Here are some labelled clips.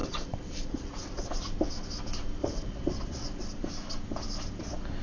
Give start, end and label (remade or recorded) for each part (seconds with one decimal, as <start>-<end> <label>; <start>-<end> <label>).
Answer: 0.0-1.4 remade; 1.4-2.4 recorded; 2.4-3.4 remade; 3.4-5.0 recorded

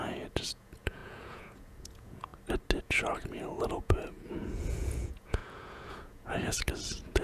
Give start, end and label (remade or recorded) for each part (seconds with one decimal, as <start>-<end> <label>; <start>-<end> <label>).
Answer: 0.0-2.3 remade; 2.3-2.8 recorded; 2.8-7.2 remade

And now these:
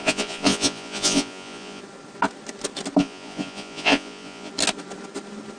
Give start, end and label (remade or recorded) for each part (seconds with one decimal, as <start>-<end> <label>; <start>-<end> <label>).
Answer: 0.0-1.8 remade; 1.8-3.0 recorded; 3.0-4.5 remade; 4.5-5.6 recorded

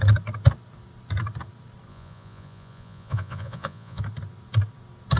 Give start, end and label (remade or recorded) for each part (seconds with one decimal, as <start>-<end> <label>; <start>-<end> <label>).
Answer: 0.0-1.9 recorded; 1.9-4.0 remade; 4.0-5.2 recorded

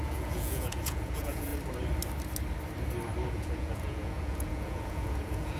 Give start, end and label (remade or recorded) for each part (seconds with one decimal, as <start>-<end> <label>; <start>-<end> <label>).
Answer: 0.0-1.5 remade; 1.5-3.3 recorded; 3.3-5.6 remade